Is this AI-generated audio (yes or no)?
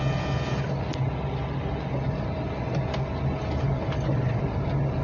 no